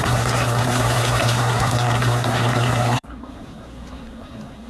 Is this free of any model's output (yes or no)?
no